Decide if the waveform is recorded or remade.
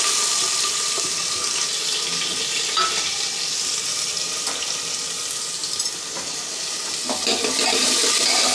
recorded